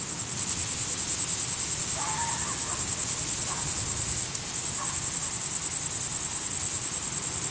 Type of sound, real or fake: real